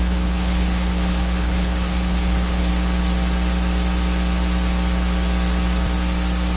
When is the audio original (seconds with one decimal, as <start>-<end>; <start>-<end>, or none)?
2.7-6.6